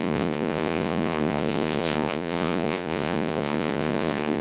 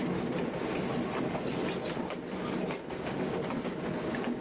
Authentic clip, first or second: second